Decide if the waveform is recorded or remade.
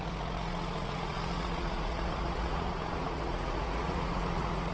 remade